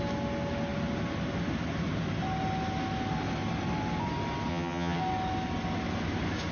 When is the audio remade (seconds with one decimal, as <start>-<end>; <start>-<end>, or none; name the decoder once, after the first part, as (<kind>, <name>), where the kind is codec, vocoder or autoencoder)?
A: 4.5-5.0 (vocoder, HiFi-GAN)